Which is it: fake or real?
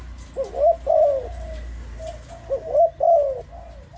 real